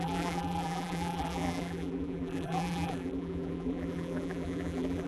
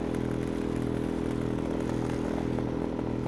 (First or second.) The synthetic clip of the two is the first